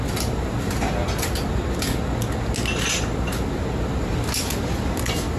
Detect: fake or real real